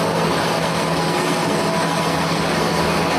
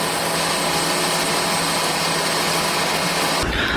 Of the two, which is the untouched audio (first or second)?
second